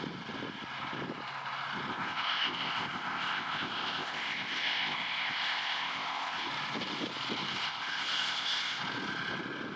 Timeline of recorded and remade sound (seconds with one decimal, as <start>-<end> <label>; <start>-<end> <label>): 0.0-1.9 recorded; 1.9-6.5 remade; 6.5-7.5 recorded; 7.5-8.8 remade; 8.8-9.8 recorded